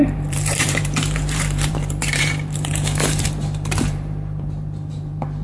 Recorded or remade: remade